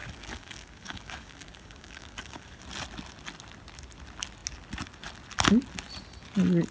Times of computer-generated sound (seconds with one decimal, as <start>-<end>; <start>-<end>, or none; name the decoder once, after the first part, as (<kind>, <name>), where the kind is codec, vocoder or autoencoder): 0.0-2.6 (codec, DAC)